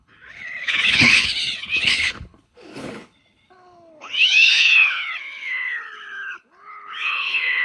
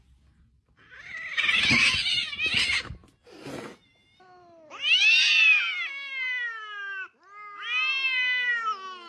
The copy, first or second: first